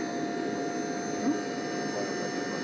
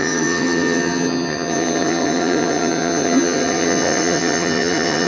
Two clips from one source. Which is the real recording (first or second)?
first